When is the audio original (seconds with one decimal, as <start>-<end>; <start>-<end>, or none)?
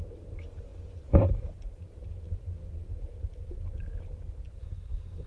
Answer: 0.0-4.6